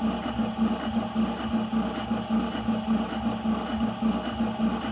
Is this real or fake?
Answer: real